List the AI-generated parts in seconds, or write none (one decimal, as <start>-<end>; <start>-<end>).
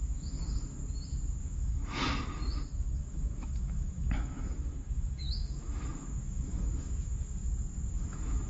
0.0-0.8; 1.4-2.0; 3.0-7.4; 7.9-8.5